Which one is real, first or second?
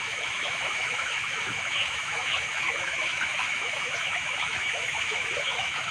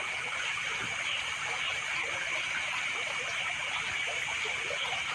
second